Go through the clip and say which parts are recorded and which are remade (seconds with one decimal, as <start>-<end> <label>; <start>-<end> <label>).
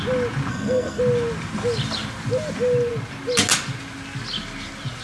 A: 0.0-0.5 recorded; 0.5-1.0 remade; 1.0-5.0 recorded